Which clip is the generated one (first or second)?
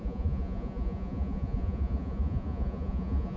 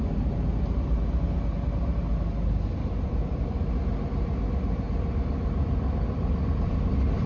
first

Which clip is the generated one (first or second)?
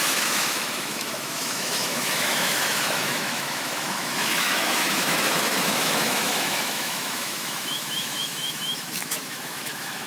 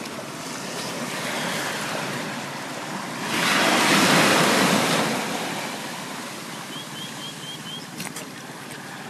first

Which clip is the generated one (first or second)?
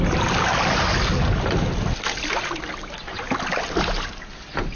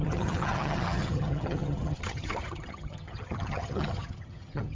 second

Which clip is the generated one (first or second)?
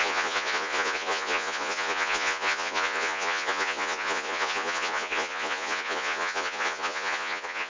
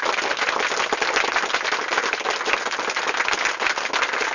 first